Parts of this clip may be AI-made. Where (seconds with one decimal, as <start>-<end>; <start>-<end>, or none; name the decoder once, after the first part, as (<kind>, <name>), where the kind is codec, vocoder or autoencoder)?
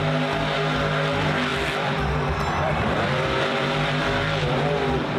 1.5-4.6 (vocoder, BigVGAN v2)